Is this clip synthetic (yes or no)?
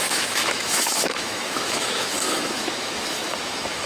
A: yes